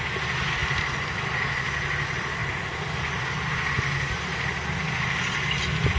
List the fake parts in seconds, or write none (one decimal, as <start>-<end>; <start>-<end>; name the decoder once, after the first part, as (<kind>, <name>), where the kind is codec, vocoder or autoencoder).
0.6-1.5 (vocoder, BigVGAN v2); 2.4-3.2

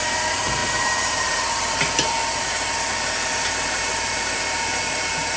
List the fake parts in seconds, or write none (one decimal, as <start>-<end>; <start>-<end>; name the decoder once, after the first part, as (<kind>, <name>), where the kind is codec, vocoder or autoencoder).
0.0-5.4 (vocoder, BigVGAN v2)